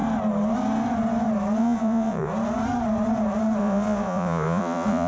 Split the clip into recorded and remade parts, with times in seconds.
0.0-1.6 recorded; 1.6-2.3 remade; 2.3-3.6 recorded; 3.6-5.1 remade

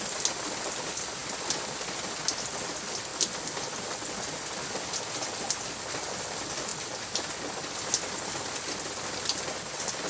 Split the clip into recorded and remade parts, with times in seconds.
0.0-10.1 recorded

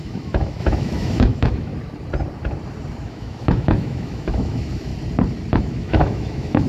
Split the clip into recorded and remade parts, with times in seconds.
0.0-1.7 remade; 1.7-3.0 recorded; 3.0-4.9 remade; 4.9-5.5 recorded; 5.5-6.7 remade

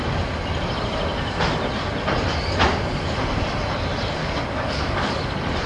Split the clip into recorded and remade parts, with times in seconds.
0.0-4.2 recorded; 4.2-5.1 remade; 5.1-5.7 recorded

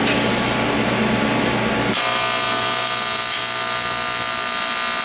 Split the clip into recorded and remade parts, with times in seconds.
0.0-5.0 recorded

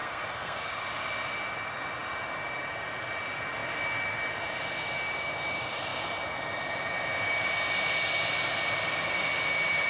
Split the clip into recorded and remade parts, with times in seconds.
0.0-0.7 remade; 0.7-9.9 recorded

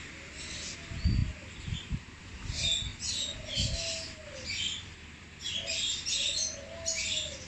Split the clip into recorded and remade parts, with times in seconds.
0.0-7.5 recorded

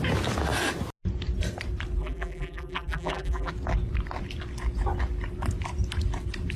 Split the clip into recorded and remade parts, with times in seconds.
0.0-2.0 recorded; 2.0-3.5 remade; 3.5-6.6 recorded